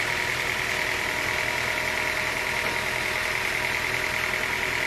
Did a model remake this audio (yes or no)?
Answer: no